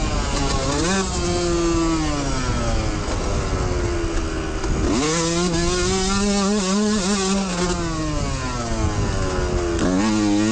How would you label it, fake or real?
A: real